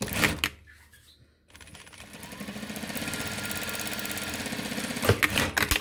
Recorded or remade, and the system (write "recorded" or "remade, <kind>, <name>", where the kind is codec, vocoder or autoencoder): recorded